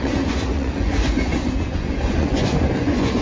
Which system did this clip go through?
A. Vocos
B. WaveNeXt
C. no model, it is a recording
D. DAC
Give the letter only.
A